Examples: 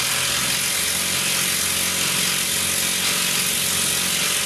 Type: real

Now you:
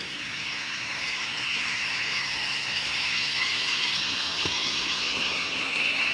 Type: fake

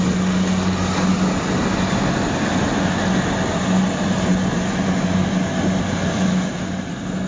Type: real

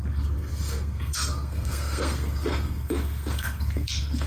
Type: fake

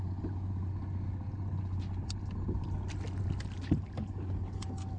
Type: real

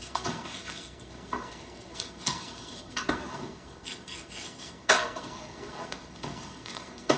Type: fake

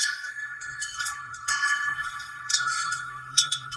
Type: fake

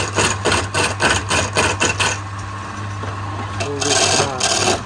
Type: real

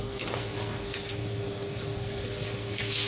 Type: fake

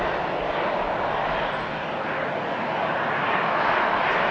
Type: real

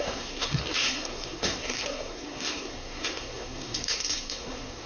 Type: fake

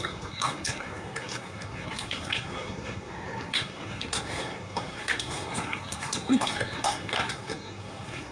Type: fake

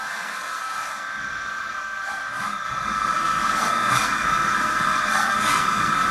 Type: fake